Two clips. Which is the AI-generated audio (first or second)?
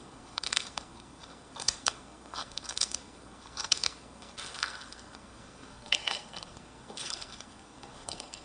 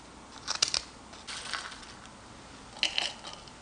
first